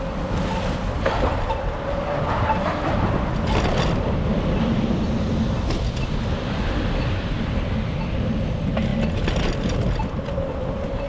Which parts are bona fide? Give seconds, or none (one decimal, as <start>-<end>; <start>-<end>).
0.0-11.1